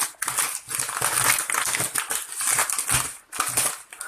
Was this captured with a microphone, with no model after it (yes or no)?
yes